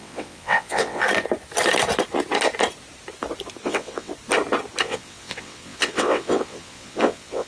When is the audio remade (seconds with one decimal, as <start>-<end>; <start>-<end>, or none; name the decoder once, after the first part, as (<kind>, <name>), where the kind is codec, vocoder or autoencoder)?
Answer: 0.0-1.0 (vocoder, WaveNeXt); 3.6-4.1; 4.8-7.5